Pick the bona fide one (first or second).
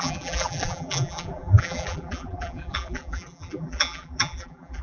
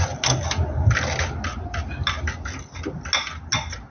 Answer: second